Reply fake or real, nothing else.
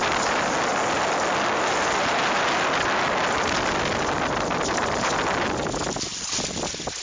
real